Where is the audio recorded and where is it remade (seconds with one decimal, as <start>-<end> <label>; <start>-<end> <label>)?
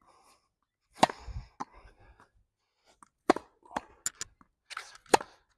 0.0-5.6 recorded